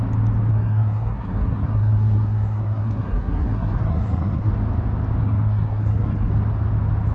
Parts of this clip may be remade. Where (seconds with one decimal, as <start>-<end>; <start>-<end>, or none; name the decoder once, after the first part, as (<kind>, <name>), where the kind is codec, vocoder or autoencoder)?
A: 0.5-4.5 (codec, SNAC); 5.2-6.3